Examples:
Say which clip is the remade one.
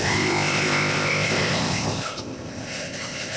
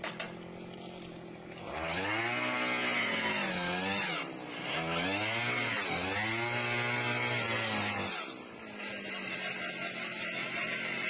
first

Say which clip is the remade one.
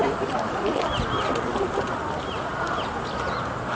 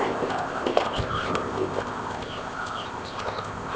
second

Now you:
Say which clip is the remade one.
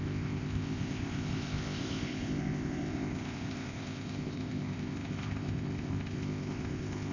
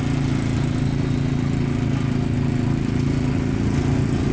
first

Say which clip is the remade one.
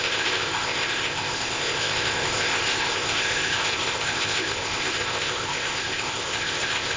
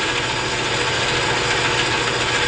first